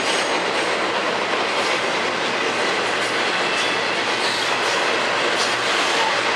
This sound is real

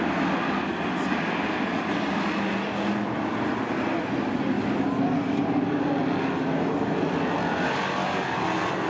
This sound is real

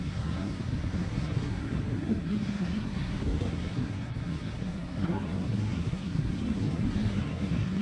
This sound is fake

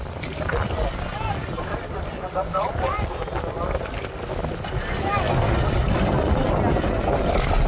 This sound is real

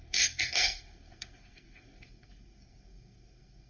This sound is fake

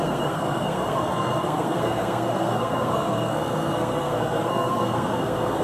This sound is fake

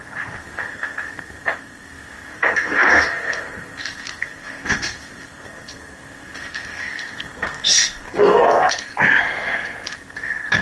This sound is fake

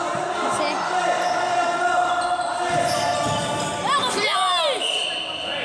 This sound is real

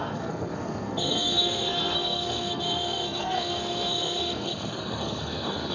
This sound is fake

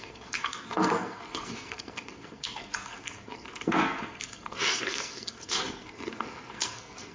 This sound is fake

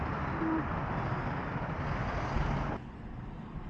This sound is real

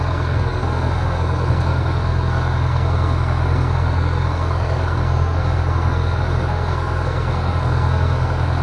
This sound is fake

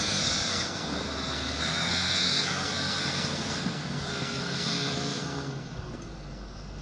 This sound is fake